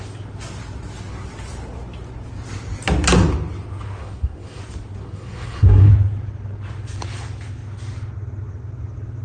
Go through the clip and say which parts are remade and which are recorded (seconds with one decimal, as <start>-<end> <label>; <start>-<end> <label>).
0.0-4.0 recorded; 4.0-4.6 remade; 4.6-5.0 recorded; 5.0-5.9 remade; 5.9-9.2 recorded